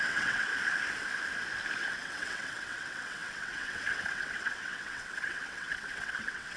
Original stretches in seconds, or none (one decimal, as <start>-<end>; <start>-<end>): 0.5-1.9